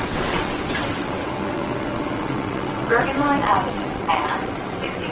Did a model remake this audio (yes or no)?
yes